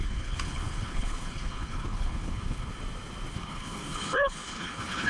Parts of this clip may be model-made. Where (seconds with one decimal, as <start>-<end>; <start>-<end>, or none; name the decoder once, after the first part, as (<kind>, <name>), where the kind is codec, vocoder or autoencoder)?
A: 0.0-2.7 (codec, HILCodec); 3.3-5.1